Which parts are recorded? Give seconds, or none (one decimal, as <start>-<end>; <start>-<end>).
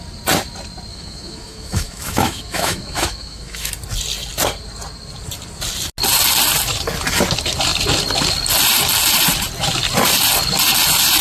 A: 0.0-0.9; 3.7-11.2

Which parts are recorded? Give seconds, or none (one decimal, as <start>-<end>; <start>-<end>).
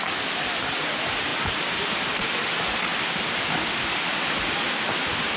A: 0.0-5.4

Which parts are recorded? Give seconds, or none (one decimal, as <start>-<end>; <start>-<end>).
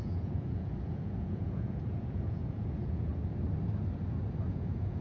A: 3.1-4.5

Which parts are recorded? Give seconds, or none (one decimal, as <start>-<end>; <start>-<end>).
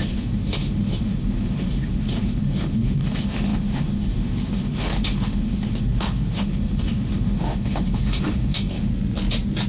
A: 8.9-9.7